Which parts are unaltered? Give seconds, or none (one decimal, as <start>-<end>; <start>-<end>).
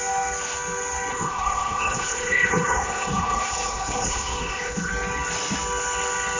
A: 0.0-1.1; 4.9-6.4